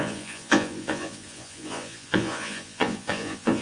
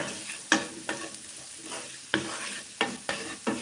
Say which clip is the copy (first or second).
first